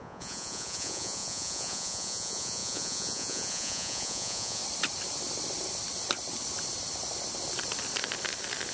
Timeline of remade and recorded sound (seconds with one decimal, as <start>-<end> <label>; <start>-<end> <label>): 0.0-4.6 remade; 4.6-8.7 recorded